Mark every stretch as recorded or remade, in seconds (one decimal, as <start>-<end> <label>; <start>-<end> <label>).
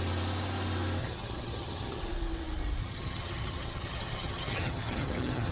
0.0-1.0 recorded; 1.0-2.0 remade; 2.0-2.8 recorded; 2.8-5.5 remade